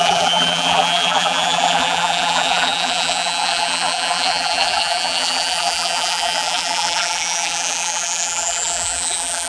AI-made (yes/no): yes